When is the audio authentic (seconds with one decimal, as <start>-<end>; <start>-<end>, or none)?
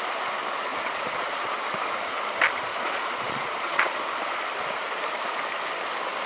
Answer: 0.0-0.7; 1.6-2.7; 3.9-6.3